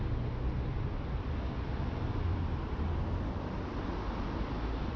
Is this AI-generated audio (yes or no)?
no